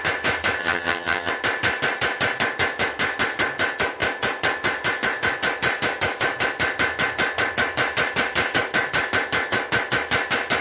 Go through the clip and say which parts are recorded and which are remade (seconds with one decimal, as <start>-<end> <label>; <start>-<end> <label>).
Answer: 0.0-0.6 recorded; 0.6-1.3 remade; 1.3-10.6 recorded